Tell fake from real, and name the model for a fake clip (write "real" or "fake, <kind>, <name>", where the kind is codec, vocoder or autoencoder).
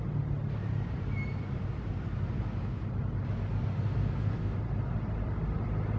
real